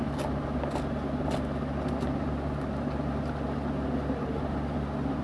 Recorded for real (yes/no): yes